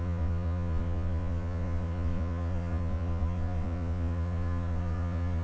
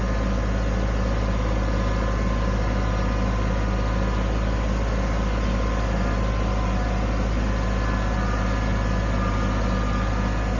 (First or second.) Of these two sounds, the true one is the second